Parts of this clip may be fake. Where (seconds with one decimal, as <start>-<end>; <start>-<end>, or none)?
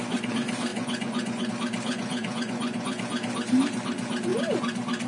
0.7-1.5; 1.9-3.0